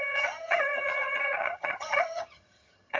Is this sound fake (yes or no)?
yes